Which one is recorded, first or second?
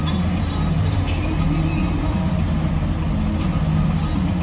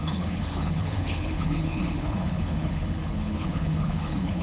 first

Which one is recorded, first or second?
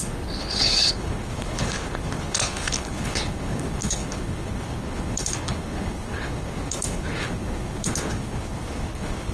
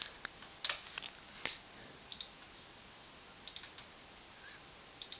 second